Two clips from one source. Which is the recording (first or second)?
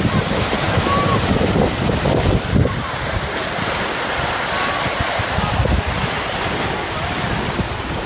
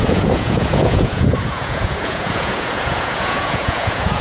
first